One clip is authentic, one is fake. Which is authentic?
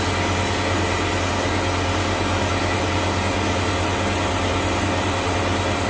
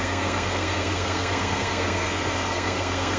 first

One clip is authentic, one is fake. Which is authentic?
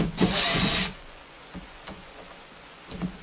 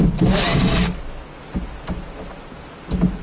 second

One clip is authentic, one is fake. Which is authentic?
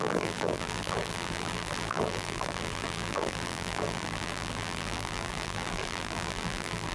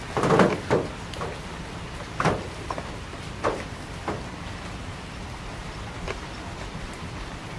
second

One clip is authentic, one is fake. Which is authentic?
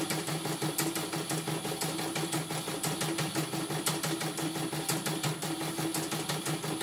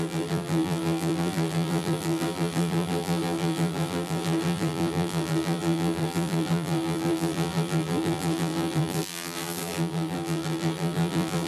first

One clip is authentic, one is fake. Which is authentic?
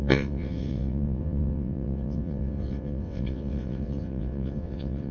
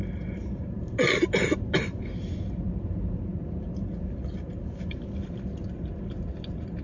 second